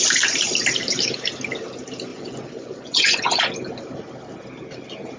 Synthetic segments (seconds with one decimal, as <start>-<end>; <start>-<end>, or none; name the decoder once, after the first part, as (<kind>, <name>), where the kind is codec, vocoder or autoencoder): 2.1-3.4 (vocoder, Vocos)